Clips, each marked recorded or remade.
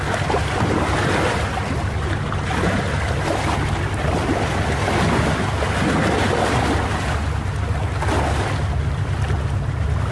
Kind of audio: recorded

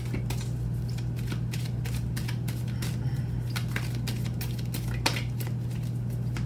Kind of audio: recorded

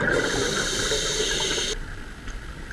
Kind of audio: recorded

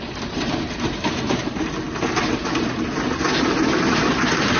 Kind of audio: recorded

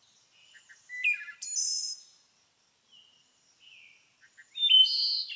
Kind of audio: recorded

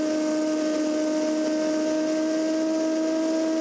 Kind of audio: recorded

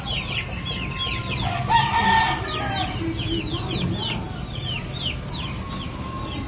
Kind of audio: recorded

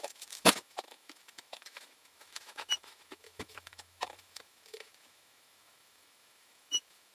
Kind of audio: remade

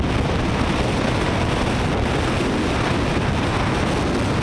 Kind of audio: recorded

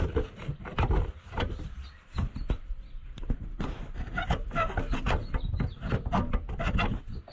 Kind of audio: recorded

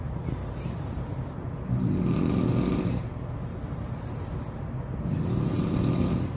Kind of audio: remade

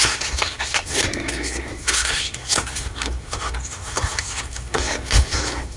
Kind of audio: remade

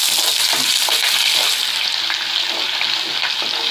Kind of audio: recorded